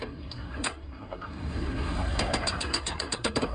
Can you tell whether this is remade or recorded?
remade